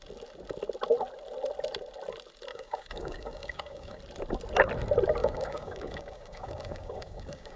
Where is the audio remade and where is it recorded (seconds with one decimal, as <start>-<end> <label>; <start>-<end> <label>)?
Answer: 0.0-2.5 recorded; 2.5-4.0 remade; 4.0-5.2 recorded; 5.2-7.6 remade